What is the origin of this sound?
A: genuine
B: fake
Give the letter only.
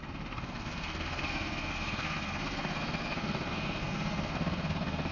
B